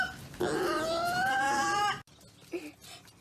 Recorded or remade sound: recorded